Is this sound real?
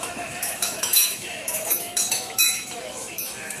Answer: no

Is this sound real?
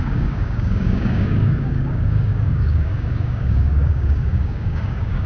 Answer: no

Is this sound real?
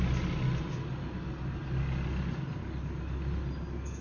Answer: yes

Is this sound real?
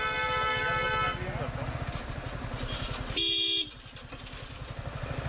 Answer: yes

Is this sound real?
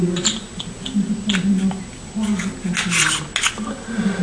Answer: yes